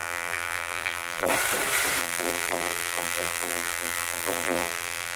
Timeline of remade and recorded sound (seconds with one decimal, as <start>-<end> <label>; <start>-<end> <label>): 0.0-1.3 remade; 1.3-2.0 recorded; 2.0-5.2 remade